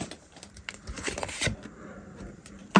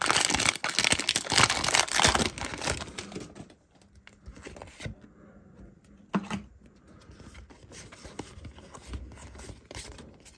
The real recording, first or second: second